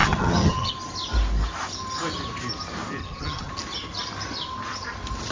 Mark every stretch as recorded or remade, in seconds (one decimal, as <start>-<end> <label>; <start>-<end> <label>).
0.0-0.7 remade; 0.7-3.0 recorded; 3.0-3.5 remade; 3.5-5.3 recorded